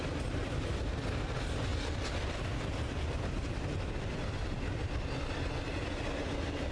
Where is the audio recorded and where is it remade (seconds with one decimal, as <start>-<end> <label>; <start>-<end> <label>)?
0.0-6.7 recorded